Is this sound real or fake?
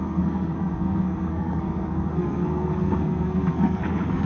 fake